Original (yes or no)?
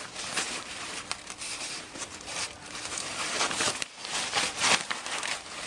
no